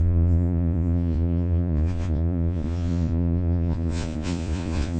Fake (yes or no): yes